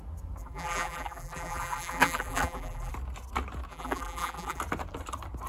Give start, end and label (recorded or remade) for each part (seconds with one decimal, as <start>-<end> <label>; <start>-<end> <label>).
0.0-0.4 recorded; 0.4-2.9 remade; 2.9-3.7 recorded; 3.7-4.6 remade; 4.6-5.5 recorded